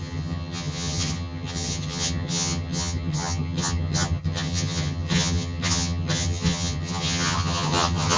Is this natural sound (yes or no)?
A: no